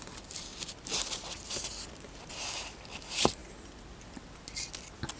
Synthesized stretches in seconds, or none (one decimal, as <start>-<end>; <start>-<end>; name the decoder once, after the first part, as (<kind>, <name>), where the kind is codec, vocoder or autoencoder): 0.0-0.5 (vocoder, BigVGAN v2); 2.2-3.4